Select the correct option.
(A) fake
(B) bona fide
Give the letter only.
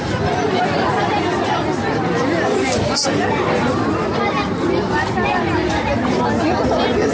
A